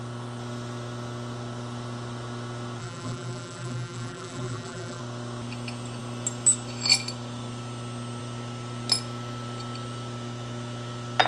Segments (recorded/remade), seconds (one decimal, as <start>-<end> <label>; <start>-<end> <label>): 0.0-2.8 recorded; 2.8-5.0 remade; 5.0-11.3 recorded